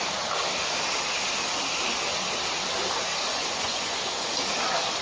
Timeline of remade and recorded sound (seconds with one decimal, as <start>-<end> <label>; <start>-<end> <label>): 0.0-3.3 recorded; 3.3-4.3 remade; 4.3-5.0 recorded